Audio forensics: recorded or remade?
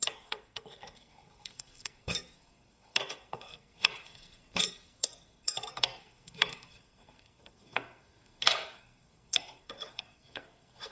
remade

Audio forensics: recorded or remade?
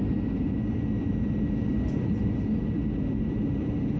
recorded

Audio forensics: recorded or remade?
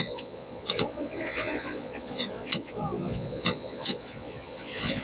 remade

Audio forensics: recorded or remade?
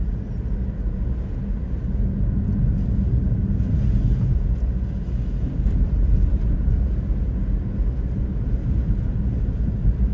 recorded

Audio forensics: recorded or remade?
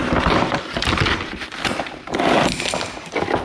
recorded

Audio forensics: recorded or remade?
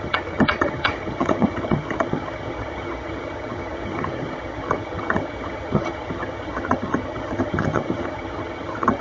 remade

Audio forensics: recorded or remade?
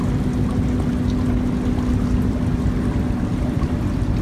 recorded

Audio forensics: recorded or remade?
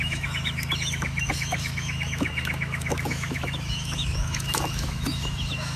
remade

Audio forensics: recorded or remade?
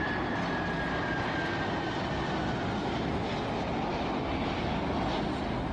recorded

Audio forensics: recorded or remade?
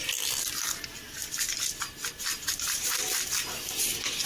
recorded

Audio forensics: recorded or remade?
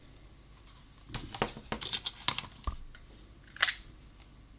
recorded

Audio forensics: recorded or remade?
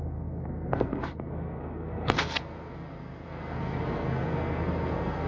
remade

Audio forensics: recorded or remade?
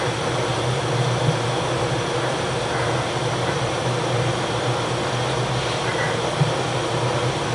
recorded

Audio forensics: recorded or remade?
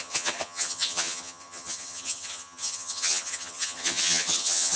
remade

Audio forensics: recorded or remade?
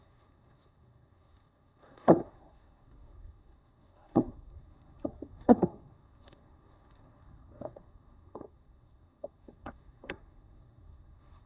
remade